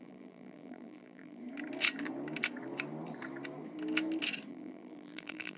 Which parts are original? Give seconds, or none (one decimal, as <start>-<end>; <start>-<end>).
1.4-4.5